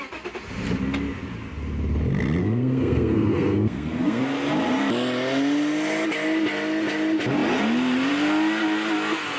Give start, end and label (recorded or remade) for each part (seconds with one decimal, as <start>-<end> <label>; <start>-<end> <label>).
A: 0.0-2.4 recorded; 2.4-4.2 remade; 4.2-9.4 recorded